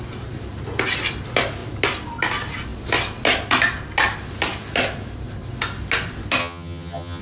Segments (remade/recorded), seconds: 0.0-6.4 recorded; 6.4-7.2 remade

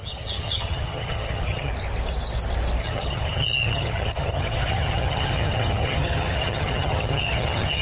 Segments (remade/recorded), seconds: 0.0-1.7 remade; 1.7-2.8 recorded; 2.8-7.8 remade

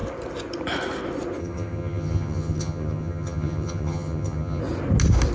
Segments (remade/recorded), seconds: 0.0-1.4 recorded; 1.4-4.6 remade; 4.6-5.3 recorded

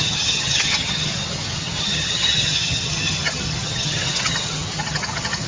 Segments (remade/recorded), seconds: 0.0-1.1 remade; 1.1-1.6 recorded; 1.6-5.5 remade

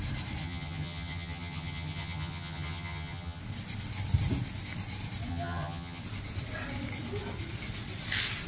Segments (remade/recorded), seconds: 0.0-0.4 recorded; 0.4-3.4 remade; 3.4-5.3 recorded; 5.3-6.0 remade; 6.0-8.5 recorded

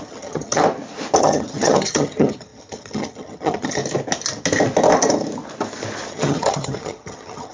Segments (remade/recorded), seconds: 0.0-0.6 remade; 0.6-1.2 recorded; 1.2-3.8 remade; 3.8-6.1 recorded; 6.1-7.5 remade

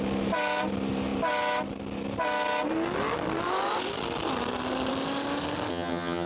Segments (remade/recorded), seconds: 0.0-5.7 recorded; 5.7-6.3 remade

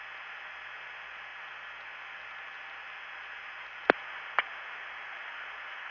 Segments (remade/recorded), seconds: 0.0-5.9 recorded